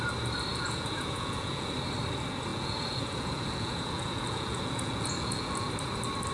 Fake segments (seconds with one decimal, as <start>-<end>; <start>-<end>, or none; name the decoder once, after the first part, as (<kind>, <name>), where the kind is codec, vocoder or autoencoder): 0.5-1.7 (vocoder, Vocos); 2.5-5.7